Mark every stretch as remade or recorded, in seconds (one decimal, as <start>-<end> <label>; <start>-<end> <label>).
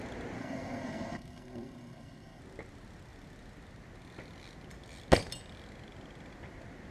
0.0-0.4 recorded; 0.4-2.4 remade; 2.4-6.9 recorded